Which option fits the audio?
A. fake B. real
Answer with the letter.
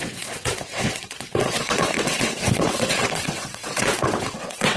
A